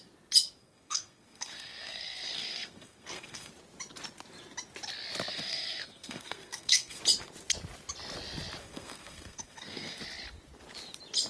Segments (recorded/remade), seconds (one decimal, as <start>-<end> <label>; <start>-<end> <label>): 0.0-0.6 recorded; 0.6-3.5 remade; 3.5-5.3 recorded; 5.3-7.0 remade; 7.0-8.6 recorded; 8.6-10.0 remade; 10.0-11.3 recorded

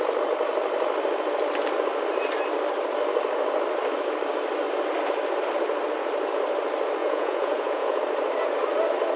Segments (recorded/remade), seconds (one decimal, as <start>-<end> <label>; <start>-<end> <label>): 0.0-7.0 recorded; 7.0-8.0 remade; 8.0-9.2 recorded

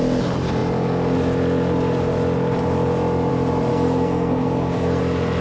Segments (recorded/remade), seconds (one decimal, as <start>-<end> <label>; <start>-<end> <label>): 0.0-3.7 recorded; 3.7-5.0 remade; 5.0-5.4 recorded

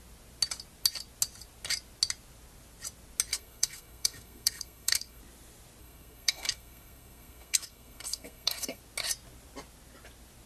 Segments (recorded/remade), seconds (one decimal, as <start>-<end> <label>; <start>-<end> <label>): 0.0-3.3 recorded; 3.3-5.2 remade; 5.2-5.8 recorded; 5.8-8.8 remade; 8.8-10.5 recorded